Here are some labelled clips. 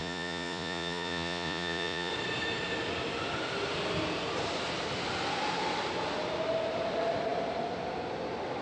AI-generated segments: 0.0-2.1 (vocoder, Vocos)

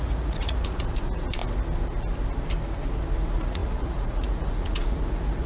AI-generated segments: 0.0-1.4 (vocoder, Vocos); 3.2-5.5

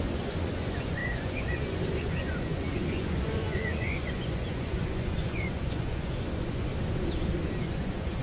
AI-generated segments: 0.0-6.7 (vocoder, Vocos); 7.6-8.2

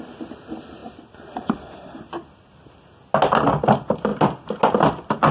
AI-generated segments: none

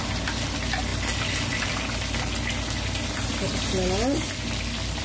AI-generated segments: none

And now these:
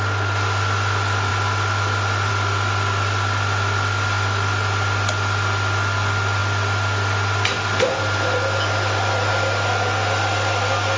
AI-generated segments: none

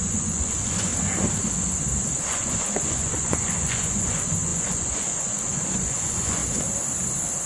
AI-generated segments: 0.0-0.9 (vocoder, Vocos); 2.2-6.4